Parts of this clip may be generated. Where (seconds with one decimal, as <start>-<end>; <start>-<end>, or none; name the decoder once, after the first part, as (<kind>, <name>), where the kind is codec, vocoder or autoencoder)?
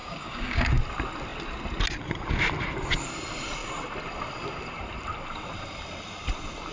0.0-0.8 (codec, DAC)